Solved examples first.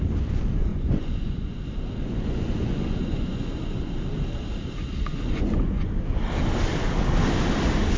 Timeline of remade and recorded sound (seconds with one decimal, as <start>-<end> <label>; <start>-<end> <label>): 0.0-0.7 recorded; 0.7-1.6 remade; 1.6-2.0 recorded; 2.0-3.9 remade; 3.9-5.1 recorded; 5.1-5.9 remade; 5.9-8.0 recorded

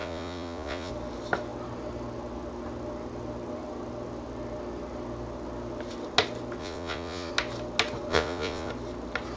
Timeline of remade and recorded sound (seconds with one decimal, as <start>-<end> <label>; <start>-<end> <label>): 0.0-0.9 remade; 0.9-6.6 recorded; 6.6-7.3 remade; 7.3-8.1 recorded; 8.1-8.7 remade; 8.7-9.4 recorded

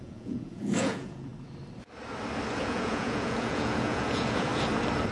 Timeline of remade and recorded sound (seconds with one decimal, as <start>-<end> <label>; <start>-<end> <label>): 0.0-1.3 remade; 1.3-2.6 recorded; 2.6-4.5 remade; 4.5-5.1 recorded

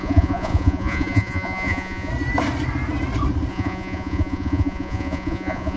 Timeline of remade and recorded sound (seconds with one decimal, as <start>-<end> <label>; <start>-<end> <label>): 0.0-2.1 remade; 2.1-3.5 recorded; 3.5-5.8 remade